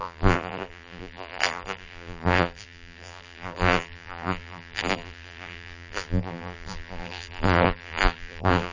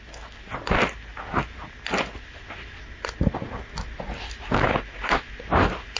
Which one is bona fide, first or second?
second